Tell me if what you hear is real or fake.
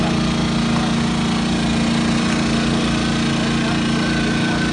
real